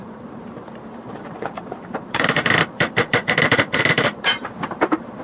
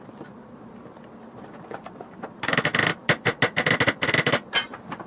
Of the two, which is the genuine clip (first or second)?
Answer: second